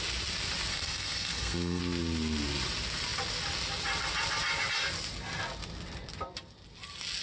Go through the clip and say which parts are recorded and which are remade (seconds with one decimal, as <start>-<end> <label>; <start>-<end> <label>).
0.0-0.7 recorded; 0.7-1.8 remade; 1.8-7.2 recorded